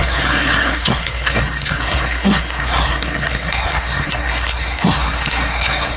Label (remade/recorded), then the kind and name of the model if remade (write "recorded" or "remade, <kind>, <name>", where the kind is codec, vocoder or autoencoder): remade, codec, SNAC